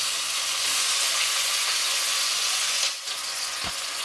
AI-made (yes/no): yes